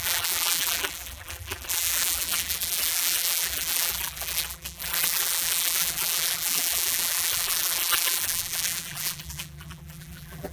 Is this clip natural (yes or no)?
no